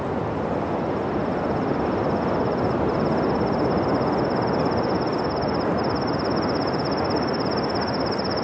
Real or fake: real